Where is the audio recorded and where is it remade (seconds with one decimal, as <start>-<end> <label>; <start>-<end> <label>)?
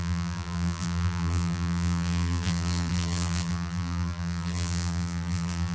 0.0-5.7 remade